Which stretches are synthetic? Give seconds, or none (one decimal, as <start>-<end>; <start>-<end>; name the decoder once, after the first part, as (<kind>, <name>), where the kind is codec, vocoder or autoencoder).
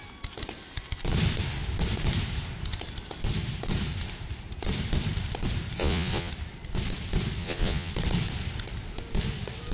5.8-6.3 (vocoder, Vocos); 7.4-7.9